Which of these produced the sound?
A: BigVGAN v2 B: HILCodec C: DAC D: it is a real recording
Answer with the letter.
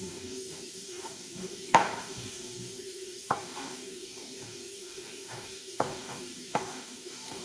C